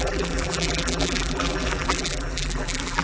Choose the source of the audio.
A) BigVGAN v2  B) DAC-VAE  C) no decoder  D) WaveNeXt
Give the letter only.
A